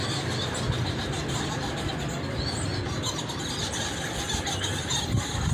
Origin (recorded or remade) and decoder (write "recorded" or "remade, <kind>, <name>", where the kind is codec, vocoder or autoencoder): recorded